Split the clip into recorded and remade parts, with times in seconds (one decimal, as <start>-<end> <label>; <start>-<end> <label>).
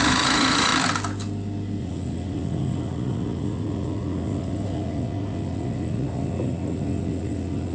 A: 0.0-0.7 remade; 0.7-1.8 recorded; 1.8-7.7 remade